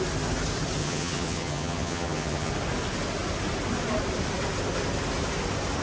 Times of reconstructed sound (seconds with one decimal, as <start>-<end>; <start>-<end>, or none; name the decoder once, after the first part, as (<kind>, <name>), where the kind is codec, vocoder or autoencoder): 0.8-2.5 (vocoder, HiFi-GAN)